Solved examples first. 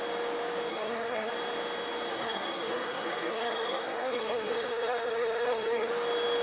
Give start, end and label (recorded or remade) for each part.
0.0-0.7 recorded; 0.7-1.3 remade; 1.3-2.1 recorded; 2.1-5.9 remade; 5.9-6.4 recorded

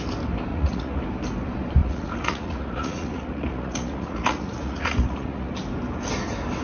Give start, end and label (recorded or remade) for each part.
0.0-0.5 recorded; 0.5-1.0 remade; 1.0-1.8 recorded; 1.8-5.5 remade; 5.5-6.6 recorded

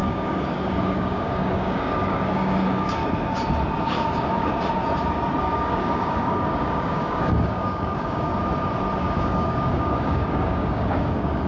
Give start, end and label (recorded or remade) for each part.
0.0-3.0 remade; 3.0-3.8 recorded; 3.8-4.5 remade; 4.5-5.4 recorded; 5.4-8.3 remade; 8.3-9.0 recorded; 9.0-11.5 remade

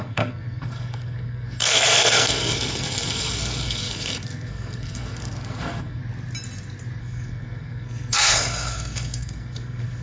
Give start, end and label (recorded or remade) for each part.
0.0-6.0 remade; 6.0-7.0 recorded; 7.0-10.0 remade

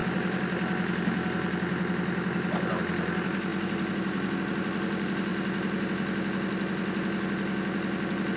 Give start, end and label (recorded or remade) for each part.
0.0-8.4 recorded